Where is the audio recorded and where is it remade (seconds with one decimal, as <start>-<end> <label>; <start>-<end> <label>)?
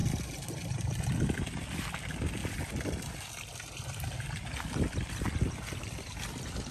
0.0-6.7 recorded